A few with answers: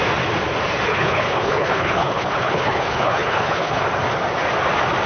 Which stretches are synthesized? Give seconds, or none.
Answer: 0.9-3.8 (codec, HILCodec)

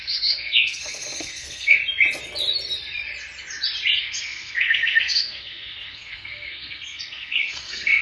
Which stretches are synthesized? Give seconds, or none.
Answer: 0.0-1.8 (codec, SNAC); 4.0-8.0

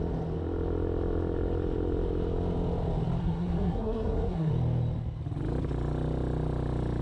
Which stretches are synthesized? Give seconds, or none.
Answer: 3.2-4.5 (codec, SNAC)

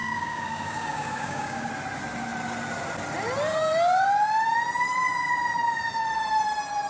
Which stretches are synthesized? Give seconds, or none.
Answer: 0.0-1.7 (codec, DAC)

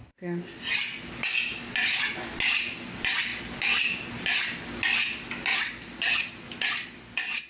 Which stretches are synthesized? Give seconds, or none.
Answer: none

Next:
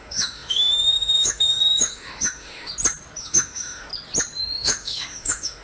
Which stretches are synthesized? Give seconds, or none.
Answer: 0.0-2.7 (autoencoder, DAC-VAE); 3.2-3.9; 4.4-5.6